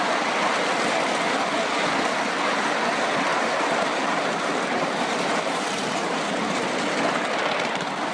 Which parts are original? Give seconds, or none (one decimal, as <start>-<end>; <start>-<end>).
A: 0.0-3.3; 6.2-8.1